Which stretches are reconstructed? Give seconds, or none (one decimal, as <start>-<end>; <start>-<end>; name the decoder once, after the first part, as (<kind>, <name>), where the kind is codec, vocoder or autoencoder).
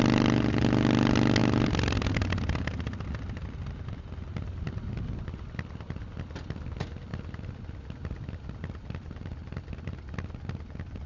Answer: none